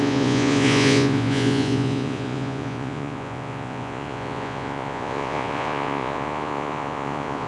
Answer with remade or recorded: remade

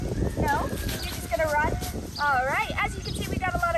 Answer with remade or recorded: recorded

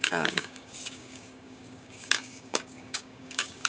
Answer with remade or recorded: remade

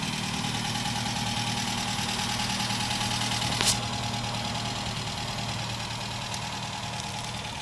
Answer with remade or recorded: recorded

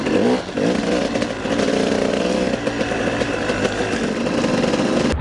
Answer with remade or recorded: recorded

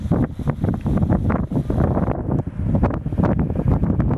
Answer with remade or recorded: recorded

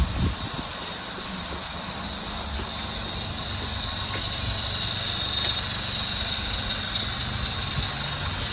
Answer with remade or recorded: recorded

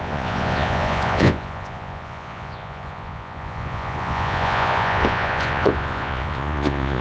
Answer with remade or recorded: remade